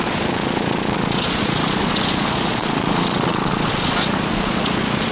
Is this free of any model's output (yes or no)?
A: no